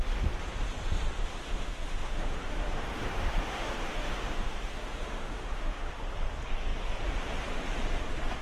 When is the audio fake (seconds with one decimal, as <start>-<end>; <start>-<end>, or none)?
1.2-5.9